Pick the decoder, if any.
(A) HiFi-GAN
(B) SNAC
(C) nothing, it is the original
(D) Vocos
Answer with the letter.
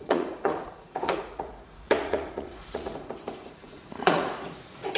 D